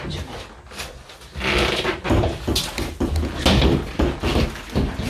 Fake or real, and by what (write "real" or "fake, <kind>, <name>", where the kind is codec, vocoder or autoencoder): real